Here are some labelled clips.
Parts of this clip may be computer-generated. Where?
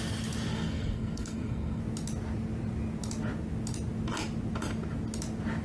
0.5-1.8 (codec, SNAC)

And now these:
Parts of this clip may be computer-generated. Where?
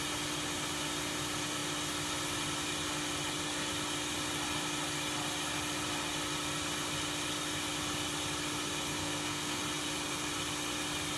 9.0-9.6 (codec, SNAC)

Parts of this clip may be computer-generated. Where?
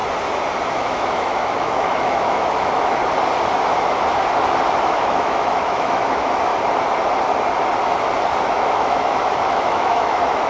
0.7-3.0 (autoencoder, DAC-VAE); 4.8-6.5; 8.4-10.5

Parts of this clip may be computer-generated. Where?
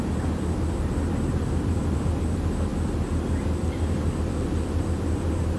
none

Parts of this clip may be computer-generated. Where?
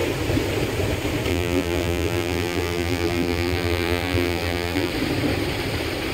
1.3-4.9 (vocoder, BigVGAN v2)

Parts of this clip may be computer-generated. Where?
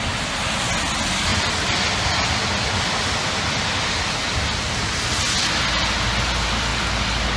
none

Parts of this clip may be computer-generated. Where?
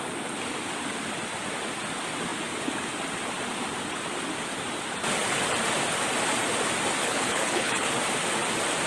7.0-7.9 (codec, HILCodec)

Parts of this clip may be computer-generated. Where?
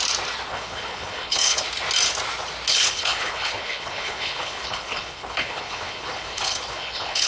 0.5-1.6 (codec, HILCodec); 2.7-7.3